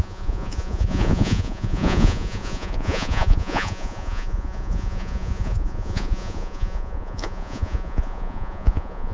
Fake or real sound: fake